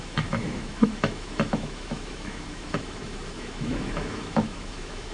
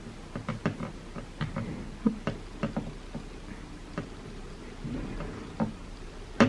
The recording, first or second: second